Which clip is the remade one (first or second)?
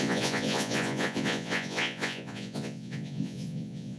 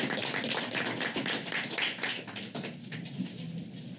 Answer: first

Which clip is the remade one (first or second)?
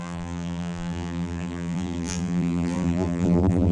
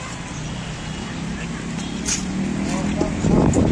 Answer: first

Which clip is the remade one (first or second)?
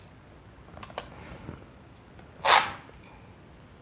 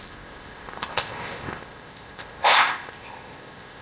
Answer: second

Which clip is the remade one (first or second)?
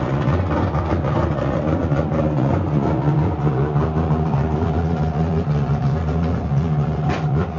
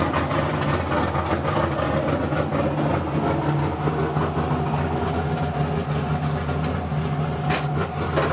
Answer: first